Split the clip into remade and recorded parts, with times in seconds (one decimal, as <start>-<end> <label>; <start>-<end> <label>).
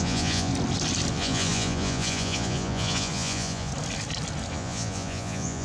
0.0-0.5 remade; 0.5-1.1 recorded; 1.1-3.7 remade; 3.7-4.5 recorded; 4.5-5.6 remade